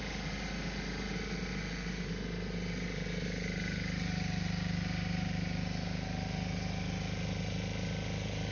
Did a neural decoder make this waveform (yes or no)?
no